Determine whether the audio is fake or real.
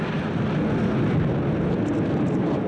real